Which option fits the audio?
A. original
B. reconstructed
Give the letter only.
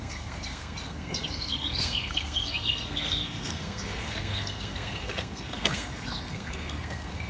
B